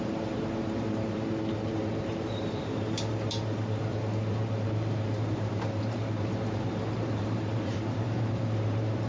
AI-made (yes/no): yes